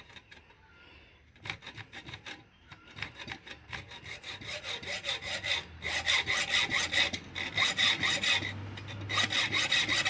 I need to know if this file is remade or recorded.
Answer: recorded